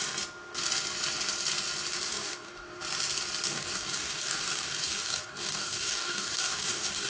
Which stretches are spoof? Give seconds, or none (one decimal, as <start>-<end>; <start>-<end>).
2.1-2.8; 3.5-7.1